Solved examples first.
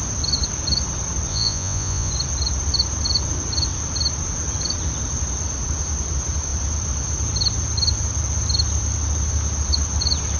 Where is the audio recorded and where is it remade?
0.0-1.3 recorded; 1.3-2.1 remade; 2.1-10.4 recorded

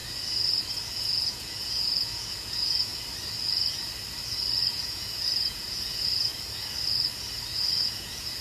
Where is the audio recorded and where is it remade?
0.0-0.9 recorded; 0.9-2.9 remade; 2.9-4.7 recorded; 4.7-6.3 remade; 6.3-7.8 recorded; 7.8-8.4 remade

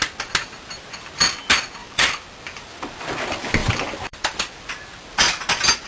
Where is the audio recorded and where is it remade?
0.0-1.8 recorded; 1.8-3.0 remade; 3.0-3.6 recorded; 3.6-4.7 remade; 4.7-5.9 recorded

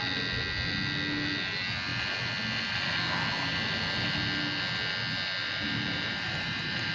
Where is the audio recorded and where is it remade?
0.0-5.4 recorded; 5.4-6.9 remade

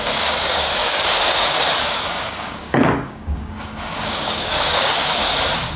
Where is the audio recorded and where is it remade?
0.0-5.1 remade; 5.1-5.8 recorded

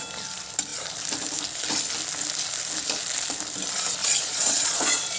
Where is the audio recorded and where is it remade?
0.0-4.0 recorded; 4.0-5.2 remade

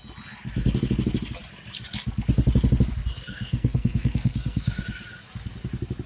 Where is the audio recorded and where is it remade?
0.0-3.1 recorded; 3.1-4.8 remade; 4.8-6.1 recorded

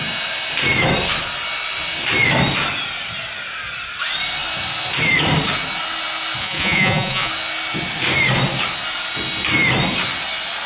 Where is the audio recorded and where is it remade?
0.0-6.4 recorded; 6.4-7.3 remade; 7.3-10.7 recorded